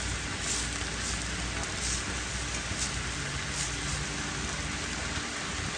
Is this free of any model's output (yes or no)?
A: yes